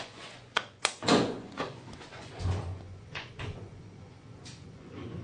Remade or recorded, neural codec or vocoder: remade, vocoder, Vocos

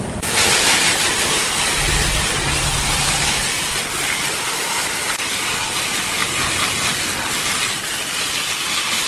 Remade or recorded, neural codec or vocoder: recorded